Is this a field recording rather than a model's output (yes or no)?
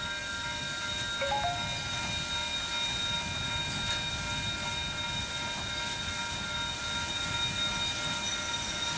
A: yes